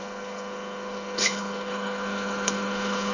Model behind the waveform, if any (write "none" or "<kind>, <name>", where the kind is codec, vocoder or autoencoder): codec, HILCodec